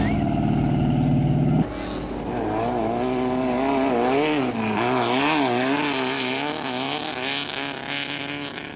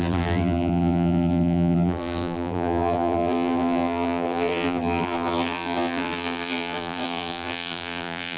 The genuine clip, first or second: first